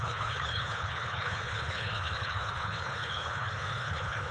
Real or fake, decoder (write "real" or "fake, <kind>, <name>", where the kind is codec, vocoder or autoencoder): fake, codec, HILCodec